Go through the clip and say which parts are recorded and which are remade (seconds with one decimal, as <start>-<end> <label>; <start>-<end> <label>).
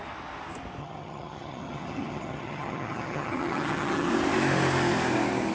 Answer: 0.0-0.8 recorded; 0.8-4.1 remade; 4.1-5.5 recorded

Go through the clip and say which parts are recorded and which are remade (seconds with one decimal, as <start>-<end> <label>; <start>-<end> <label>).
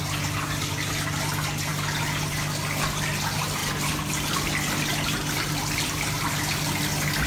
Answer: 0.0-7.3 recorded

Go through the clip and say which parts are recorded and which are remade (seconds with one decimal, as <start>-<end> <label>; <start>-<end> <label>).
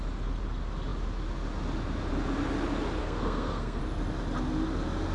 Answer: 0.0-3.0 recorded; 3.0-3.8 remade; 3.8-5.1 recorded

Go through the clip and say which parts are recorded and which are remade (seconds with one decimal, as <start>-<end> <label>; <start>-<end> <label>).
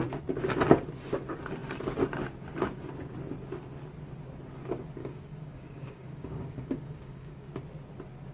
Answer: 0.0-5.0 recorded; 5.0-7.5 remade; 7.5-8.3 recorded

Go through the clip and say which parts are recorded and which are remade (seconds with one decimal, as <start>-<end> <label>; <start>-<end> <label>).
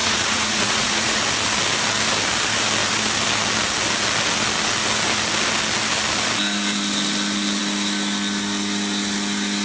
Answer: 0.0-1.2 remade; 1.2-9.6 recorded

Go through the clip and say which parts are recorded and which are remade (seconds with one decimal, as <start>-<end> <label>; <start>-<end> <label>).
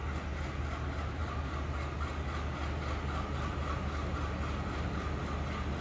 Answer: 0.0-5.8 recorded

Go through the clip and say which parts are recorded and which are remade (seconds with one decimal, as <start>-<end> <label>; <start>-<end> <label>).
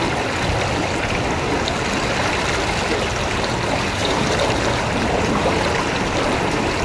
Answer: 0.0-4.0 recorded; 4.0-5.6 remade; 5.6-6.8 recorded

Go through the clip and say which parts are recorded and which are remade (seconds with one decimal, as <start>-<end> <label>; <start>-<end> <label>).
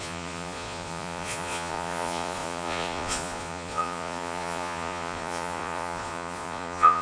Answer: 0.0-7.0 remade